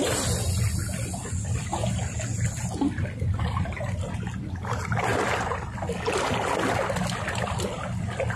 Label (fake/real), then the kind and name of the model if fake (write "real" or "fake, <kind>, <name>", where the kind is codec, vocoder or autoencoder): real